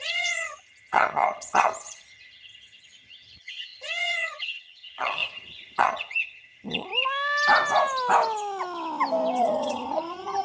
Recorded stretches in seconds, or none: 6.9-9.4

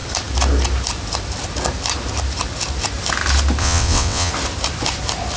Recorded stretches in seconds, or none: 0.0-3.6; 4.3-5.4

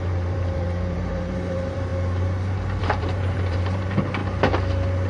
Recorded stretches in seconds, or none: 1.9-2.8; 4.2-5.1

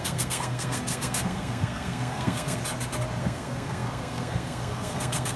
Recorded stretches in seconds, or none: 2.6-3.2

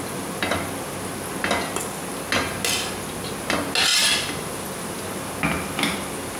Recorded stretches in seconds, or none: 0.0-3.9; 5.0-6.4

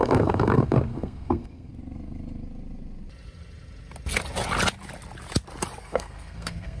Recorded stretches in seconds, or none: 1.7-5.8